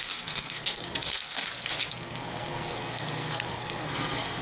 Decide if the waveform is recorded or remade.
remade